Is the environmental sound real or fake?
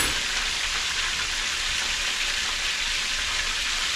real